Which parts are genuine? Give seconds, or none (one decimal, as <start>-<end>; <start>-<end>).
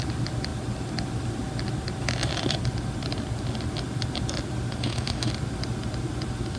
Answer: 0.0-4.8; 5.3-6.6